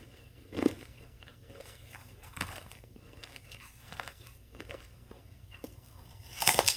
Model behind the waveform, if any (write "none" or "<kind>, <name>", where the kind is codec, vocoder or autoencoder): codec, SNAC